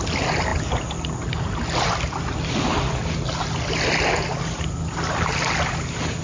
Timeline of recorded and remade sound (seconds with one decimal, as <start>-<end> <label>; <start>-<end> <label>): 0.0-6.2 recorded